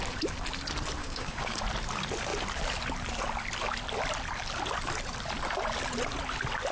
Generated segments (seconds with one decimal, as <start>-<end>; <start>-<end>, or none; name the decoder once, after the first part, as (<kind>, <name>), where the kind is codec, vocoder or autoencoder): 1.0-1.6 (codec, DAC)